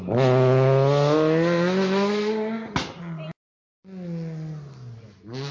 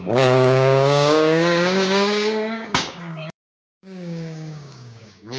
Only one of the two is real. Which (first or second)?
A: first